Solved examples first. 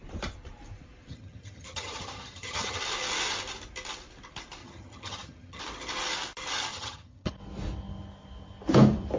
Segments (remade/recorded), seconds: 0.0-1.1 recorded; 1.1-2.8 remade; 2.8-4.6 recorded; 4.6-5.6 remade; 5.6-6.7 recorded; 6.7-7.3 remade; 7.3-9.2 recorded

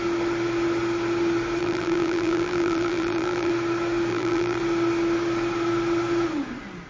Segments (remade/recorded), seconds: 0.0-1.6 recorded; 1.6-3.5 remade; 3.5-4.1 recorded; 4.1-4.6 remade; 4.6-6.9 recorded

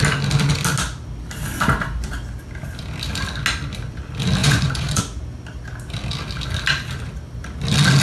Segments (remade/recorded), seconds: 0.0-4.4 recorded; 4.4-5.0 remade; 5.0-8.0 recorded